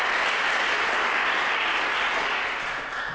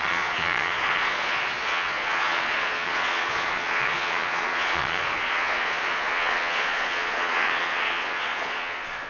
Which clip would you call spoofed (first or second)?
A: second